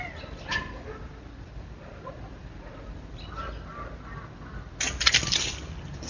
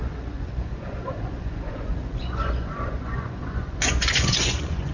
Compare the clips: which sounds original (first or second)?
first